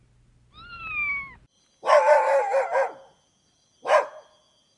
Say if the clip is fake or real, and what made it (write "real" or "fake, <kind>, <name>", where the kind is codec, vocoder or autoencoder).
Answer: real